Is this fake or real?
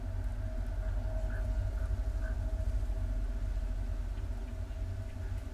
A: real